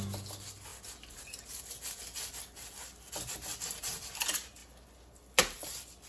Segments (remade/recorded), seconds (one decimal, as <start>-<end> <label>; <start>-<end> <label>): 0.0-6.1 recorded